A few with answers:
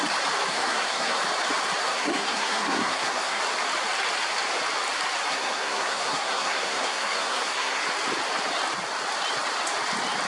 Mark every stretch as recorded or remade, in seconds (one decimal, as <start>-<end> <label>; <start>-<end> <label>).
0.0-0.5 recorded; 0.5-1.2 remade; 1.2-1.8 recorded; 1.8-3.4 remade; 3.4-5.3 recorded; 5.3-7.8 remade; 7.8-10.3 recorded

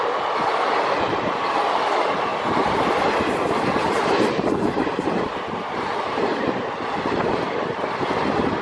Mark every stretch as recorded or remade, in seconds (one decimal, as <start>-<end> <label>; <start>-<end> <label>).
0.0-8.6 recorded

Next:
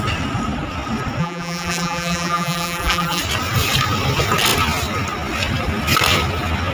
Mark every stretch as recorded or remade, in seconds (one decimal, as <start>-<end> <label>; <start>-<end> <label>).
0.0-1.2 recorded; 1.2-3.2 remade; 3.2-6.7 recorded

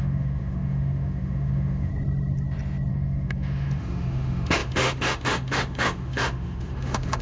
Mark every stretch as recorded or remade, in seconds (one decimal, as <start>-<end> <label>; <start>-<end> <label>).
0.0-1.9 remade; 1.9-2.9 recorded; 2.9-7.2 remade

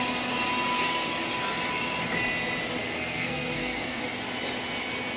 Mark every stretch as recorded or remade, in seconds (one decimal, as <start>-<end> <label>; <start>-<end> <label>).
0.0-2.8 recorded; 2.8-4.0 remade; 4.0-5.2 recorded

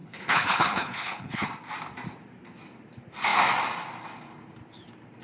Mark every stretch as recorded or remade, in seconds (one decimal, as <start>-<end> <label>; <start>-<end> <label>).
0.0-1.5 remade; 1.5-5.2 recorded

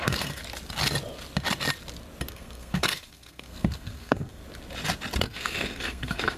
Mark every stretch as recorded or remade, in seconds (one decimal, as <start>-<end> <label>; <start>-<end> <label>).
0.0-0.4 remade; 0.4-2.3 recorded; 2.3-4.4 remade; 4.4-5.2 recorded; 5.2-6.4 remade